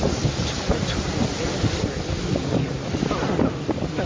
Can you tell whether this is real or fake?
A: real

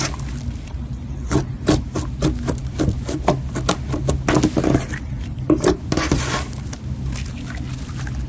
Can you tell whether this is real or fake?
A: real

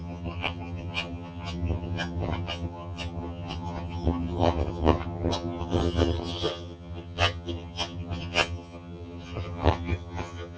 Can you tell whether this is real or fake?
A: fake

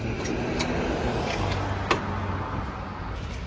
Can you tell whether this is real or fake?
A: real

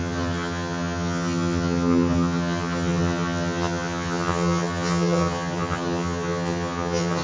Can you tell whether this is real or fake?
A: fake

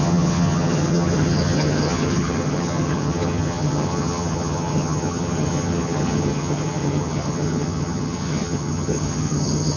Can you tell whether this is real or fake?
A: fake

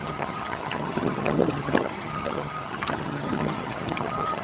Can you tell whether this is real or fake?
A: fake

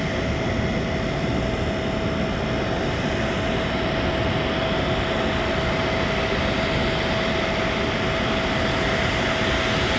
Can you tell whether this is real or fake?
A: real